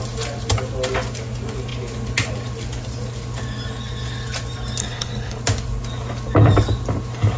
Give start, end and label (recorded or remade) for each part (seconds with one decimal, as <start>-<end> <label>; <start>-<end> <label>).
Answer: 0.0-4.8 recorded; 4.8-5.4 remade; 5.4-7.4 recorded